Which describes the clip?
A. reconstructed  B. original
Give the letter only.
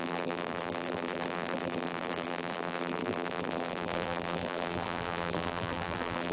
A